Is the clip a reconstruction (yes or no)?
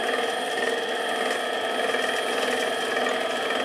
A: no